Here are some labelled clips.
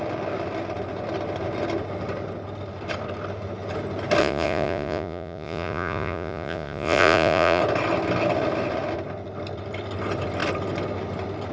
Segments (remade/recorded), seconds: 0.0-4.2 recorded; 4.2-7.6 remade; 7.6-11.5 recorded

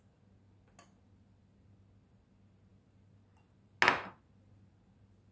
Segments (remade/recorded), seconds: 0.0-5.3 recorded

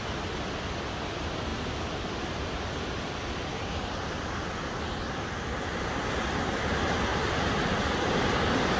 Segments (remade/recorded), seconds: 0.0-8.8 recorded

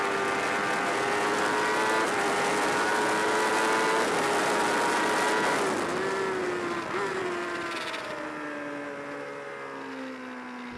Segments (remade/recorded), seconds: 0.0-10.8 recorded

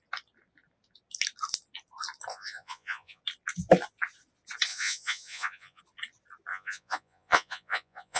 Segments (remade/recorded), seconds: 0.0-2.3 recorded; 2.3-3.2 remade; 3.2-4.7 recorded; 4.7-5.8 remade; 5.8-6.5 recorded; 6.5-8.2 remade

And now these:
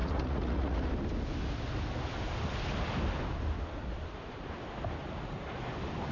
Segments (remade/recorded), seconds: 0.0-0.9 remade; 0.9-6.1 recorded

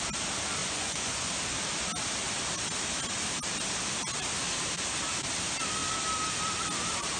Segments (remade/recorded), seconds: 0.0-0.6 recorded; 0.6-1.3 remade; 1.3-7.2 recorded